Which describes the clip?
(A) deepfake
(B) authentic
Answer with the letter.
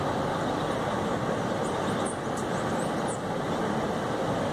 B